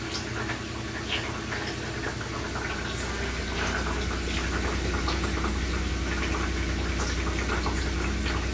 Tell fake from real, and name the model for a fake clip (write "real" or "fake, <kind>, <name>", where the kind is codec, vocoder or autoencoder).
real